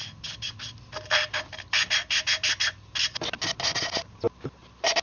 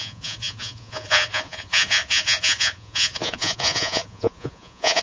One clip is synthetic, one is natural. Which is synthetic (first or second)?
second